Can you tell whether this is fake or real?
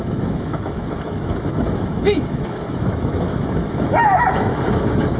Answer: fake